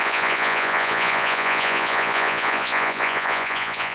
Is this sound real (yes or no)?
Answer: no